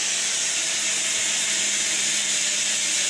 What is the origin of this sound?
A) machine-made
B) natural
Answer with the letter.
B